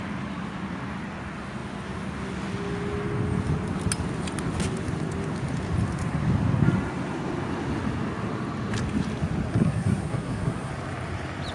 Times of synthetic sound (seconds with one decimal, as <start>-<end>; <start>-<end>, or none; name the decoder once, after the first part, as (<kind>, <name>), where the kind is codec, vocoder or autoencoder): 9.5-10.7 (codec, SNAC)